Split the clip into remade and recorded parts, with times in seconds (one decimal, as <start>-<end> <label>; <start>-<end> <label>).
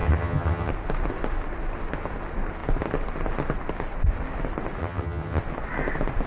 0.0-0.7 remade; 0.7-4.8 recorded; 4.8-5.4 remade; 5.4-6.3 recorded